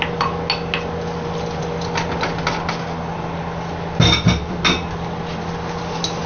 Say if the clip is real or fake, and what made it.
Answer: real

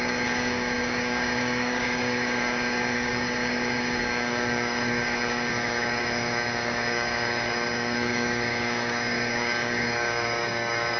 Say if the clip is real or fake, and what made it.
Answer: fake, codec, DAC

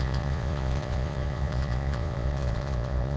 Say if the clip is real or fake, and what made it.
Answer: fake, vocoder, Vocos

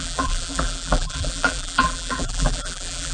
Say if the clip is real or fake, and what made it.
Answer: fake, vocoder, BigVGAN v2